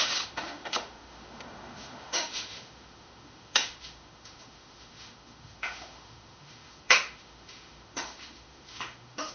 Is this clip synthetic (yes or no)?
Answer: yes